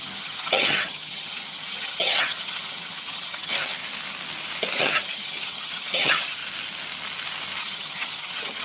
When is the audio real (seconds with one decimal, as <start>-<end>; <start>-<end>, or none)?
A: 3.7-4.8; 6.4-7.6